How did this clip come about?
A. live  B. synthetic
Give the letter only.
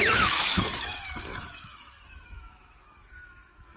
B